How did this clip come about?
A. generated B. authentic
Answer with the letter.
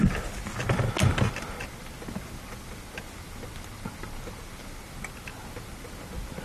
B